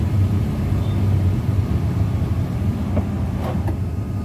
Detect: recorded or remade recorded